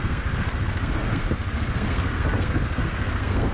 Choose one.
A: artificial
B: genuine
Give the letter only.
A